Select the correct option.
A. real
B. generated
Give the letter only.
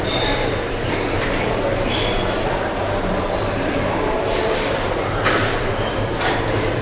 B